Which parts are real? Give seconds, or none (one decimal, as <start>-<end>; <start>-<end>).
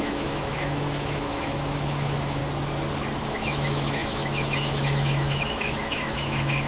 2.4-3.2